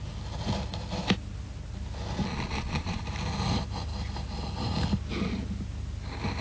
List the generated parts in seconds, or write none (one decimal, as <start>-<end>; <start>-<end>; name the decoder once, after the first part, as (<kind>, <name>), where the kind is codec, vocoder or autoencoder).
2.2-3.0 (vocoder, Vocos)